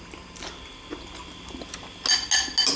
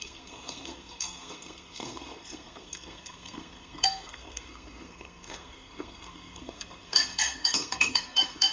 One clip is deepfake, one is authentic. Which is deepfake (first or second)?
second